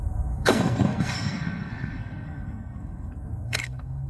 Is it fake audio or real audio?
fake